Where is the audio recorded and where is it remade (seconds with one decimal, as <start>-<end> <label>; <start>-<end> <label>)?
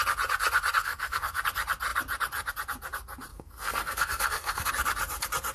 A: 0.0-0.8 recorded; 0.8-1.4 remade; 1.4-3.3 recorded; 3.3-4.7 remade; 4.7-5.5 recorded